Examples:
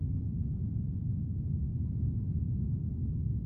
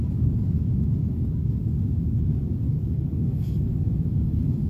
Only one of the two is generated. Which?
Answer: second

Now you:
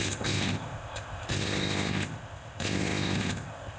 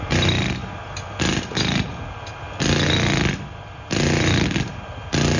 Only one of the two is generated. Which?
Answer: first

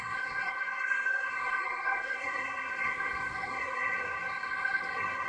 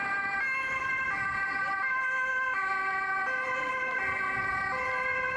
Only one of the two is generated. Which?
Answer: first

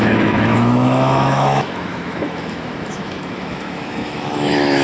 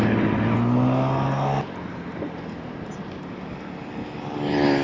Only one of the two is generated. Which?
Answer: first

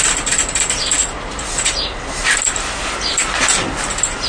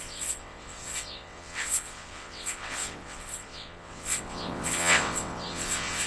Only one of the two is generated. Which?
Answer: second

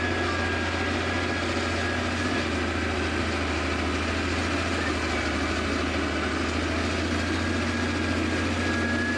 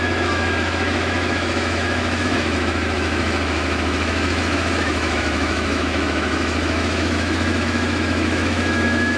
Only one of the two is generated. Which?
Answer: second